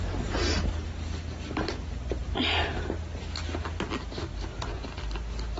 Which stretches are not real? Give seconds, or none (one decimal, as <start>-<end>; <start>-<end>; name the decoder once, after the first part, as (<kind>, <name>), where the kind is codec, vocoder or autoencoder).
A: none